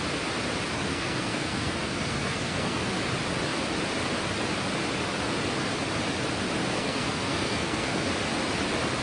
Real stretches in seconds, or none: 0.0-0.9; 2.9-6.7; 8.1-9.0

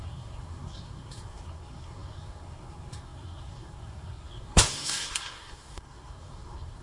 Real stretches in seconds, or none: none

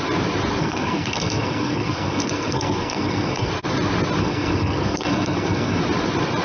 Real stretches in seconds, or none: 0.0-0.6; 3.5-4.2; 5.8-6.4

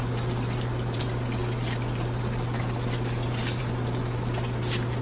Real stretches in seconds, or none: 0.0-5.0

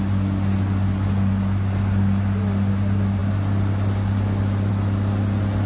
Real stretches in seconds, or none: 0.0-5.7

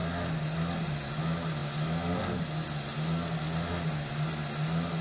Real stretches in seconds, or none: 0.0-5.0